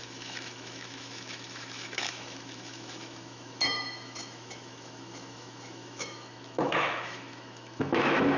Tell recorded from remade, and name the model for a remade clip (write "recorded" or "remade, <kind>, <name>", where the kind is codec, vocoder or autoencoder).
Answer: remade, autoencoder, DAC-VAE